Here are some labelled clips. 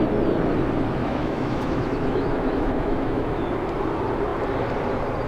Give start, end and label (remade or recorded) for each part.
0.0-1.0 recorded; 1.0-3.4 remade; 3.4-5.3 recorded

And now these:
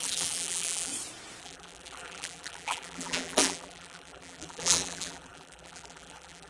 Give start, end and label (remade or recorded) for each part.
0.0-0.9 remade; 0.9-1.4 recorded; 1.4-6.5 remade

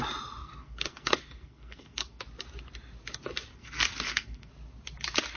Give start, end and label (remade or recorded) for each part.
0.0-0.4 recorded; 0.4-2.2 remade; 2.2-3.5 recorded; 3.5-4.5 remade; 4.5-5.4 recorded

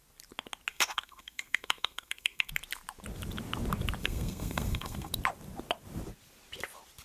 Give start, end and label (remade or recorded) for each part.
0.0-0.7 recorded; 0.7-2.5 remade; 2.5-4.0 recorded; 4.0-5.1 remade; 5.1-7.0 recorded

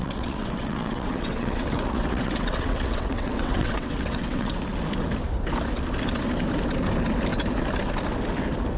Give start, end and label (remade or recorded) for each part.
0.0-4.6 remade; 4.6-8.8 recorded

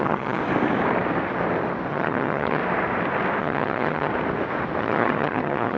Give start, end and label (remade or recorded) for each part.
0.0-0.4 remade; 0.4-1.9 recorded; 1.9-2.6 remade; 2.6-3.4 recorded; 3.4-4.1 remade; 4.1-4.8 recorded; 4.8-5.8 remade